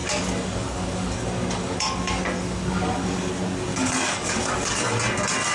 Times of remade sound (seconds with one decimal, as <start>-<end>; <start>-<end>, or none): 0.0-3.3; 3.7-4.9